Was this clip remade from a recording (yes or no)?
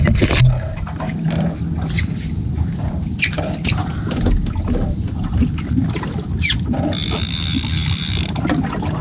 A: no